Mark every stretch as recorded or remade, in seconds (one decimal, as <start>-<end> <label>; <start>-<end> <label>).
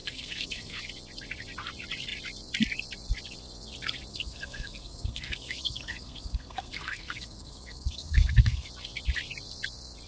0.0-0.8 remade; 0.8-4.1 recorded; 4.1-8.7 remade; 8.7-10.1 recorded